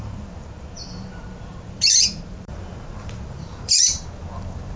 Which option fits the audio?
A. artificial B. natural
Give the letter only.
A